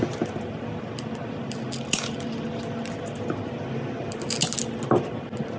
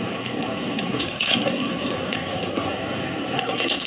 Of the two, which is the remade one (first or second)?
second